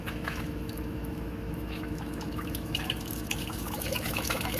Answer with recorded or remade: remade